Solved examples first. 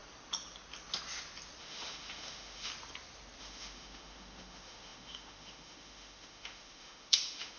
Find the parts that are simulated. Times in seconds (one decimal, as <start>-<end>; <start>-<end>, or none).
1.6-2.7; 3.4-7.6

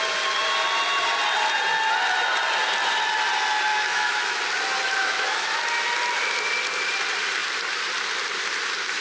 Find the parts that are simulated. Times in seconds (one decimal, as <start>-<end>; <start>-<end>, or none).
3.7-4.4; 5.0-5.6

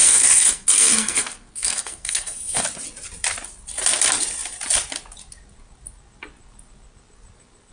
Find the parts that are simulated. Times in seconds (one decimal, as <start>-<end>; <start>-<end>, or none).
0.0-2.6